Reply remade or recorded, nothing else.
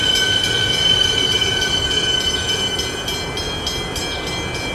recorded